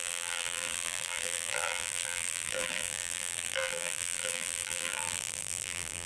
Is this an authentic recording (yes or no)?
no